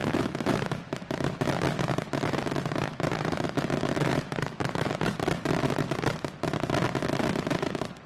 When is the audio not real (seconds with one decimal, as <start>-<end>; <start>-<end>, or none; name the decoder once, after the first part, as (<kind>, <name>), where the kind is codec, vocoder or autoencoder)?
0.0-4.9 (autoencoder, DAC-VAE)